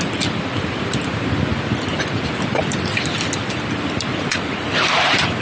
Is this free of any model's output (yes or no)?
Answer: yes